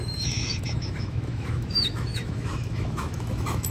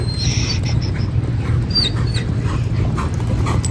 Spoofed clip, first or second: first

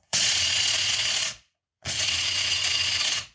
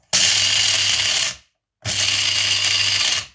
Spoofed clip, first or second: first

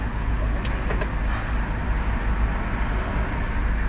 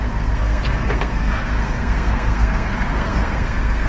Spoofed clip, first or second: second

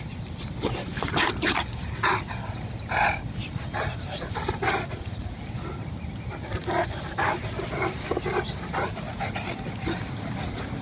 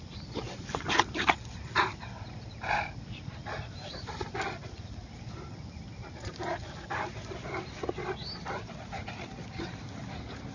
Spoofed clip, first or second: first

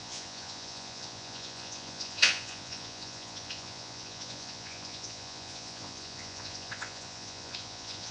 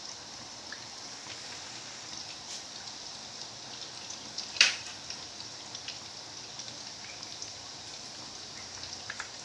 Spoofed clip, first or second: first